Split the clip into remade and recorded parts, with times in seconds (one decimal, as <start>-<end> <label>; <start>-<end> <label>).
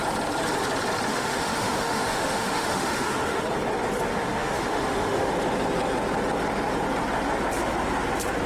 0.0-1.1 recorded; 1.1-3.4 remade; 3.4-4.1 recorded; 4.1-5.3 remade; 5.3-8.5 recorded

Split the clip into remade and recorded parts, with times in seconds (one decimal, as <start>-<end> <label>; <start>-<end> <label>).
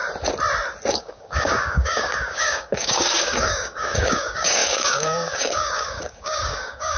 0.0-0.9 recorded; 0.9-7.0 remade